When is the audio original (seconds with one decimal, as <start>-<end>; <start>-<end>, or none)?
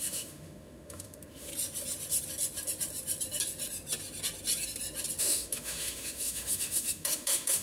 1.5-5.2